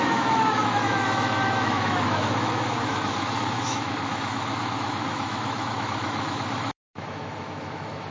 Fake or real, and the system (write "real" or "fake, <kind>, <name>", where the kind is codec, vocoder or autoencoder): fake, autoencoder, DAC-VAE